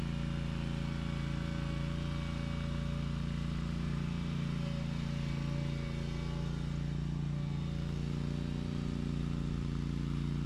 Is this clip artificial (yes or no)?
no